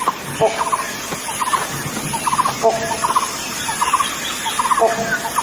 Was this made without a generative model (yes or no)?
yes